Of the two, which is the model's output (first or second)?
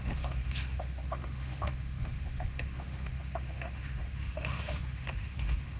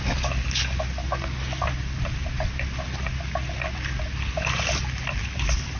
first